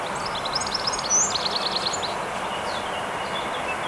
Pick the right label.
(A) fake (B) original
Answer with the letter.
B